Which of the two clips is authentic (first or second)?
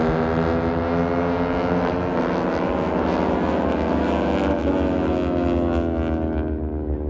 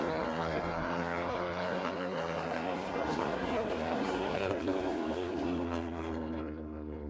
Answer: first